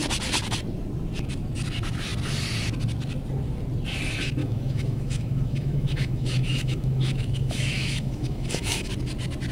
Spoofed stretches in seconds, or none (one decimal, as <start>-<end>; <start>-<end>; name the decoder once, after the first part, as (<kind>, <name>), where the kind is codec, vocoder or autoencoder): 4.4-8.9 (autoencoder, DAC-VAE)